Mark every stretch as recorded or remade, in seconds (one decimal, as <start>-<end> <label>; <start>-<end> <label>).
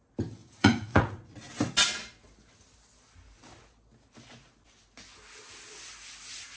0.0-0.4 recorded; 0.4-1.3 remade; 1.3-6.6 recorded